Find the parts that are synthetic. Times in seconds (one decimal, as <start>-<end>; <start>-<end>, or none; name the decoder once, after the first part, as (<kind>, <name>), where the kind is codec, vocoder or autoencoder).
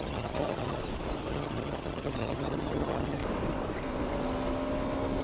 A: 0.0-0.8 (vocoder, HiFi-GAN); 1.3-3.2